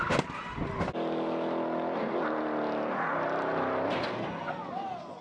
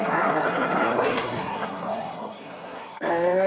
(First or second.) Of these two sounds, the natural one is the first